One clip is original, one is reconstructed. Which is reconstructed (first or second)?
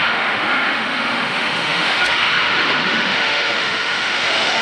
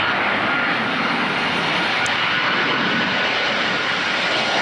first